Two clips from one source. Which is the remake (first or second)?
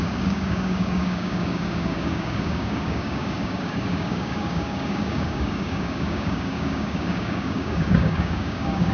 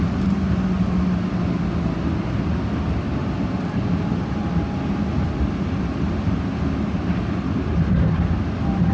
first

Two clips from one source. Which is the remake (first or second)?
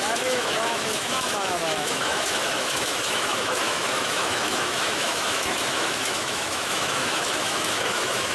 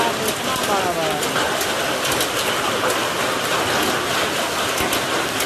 first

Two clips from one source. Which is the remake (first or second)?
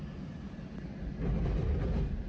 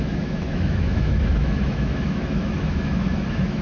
second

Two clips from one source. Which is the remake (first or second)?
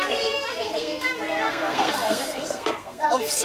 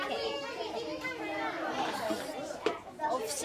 first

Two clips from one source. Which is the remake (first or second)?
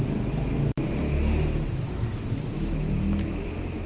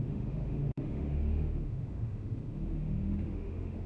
second